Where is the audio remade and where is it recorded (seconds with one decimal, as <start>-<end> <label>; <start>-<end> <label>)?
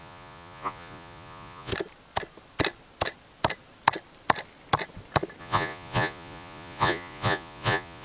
0.0-1.7 remade; 1.7-5.4 recorded; 5.4-8.0 remade